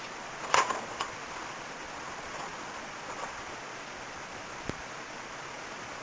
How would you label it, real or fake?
fake